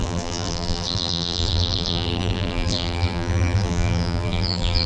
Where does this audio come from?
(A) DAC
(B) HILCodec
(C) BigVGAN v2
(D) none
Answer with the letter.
C